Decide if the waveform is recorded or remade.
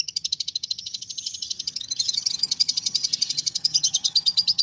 remade